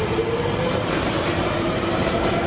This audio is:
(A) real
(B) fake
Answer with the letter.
B